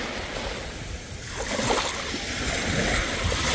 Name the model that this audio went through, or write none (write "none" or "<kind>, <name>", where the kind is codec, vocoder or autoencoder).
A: none